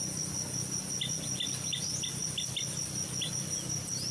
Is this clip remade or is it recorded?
recorded